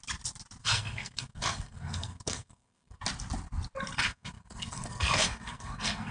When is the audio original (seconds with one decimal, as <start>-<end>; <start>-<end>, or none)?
0.0-0.6; 3.0-4.0